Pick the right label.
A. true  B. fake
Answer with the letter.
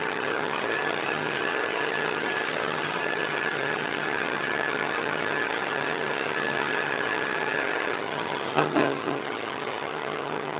B